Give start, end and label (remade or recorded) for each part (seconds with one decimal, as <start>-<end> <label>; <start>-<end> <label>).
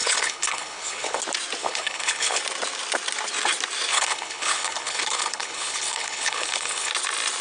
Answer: 0.0-1.2 remade; 1.2-1.6 recorded; 1.6-2.4 remade; 2.4-3.9 recorded; 3.9-6.9 remade; 6.9-7.4 recorded